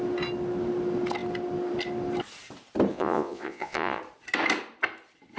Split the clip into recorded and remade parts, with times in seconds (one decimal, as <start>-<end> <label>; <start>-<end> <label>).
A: 0.0-2.9 recorded; 2.9-4.0 remade; 4.0-5.4 recorded